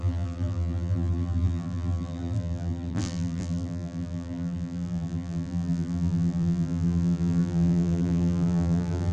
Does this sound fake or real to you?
fake